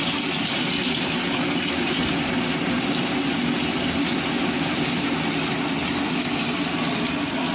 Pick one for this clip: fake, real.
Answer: real